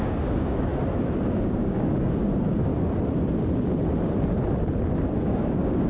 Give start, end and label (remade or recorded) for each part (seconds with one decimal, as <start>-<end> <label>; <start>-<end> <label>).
0.0-0.7 remade; 0.7-1.2 recorded; 1.2-2.7 remade; 2.7-5.2 recorded; 5.2-5.9 remade